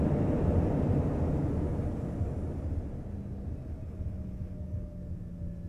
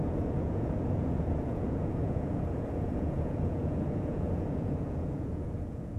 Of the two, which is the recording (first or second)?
first